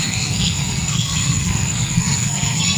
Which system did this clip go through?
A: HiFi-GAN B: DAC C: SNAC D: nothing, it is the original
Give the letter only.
C